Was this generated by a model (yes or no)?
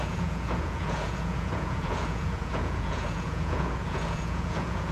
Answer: yes